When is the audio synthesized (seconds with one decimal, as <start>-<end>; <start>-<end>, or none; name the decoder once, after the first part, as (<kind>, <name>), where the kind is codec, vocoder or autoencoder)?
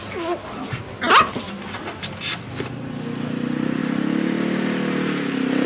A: none